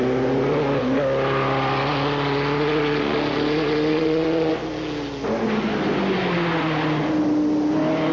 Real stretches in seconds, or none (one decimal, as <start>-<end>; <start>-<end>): 0.0-3.9; 4.5-8.1